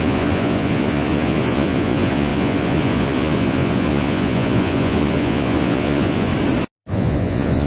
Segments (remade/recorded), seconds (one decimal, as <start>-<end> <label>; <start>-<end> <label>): 0.0-6.3 remade; 6.3-6.9 recorded; 6.9-7.7 remade

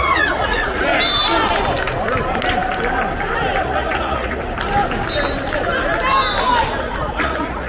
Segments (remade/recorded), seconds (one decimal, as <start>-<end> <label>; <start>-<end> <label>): 0.0-0.9 remade; 0.9-3.6 recorded; 3.6-4.4 remade; 4.4-6.8 recorded; 6.8-7.7 remade